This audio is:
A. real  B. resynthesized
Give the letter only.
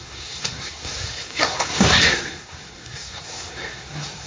B